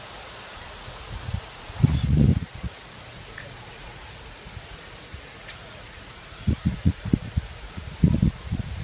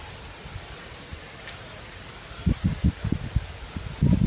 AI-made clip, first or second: first